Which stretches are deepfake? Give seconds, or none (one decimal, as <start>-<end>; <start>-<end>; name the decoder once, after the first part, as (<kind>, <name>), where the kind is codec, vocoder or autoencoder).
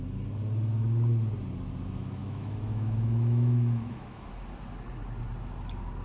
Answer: 2.2-4.3 (autoencoder, DAC-VAE)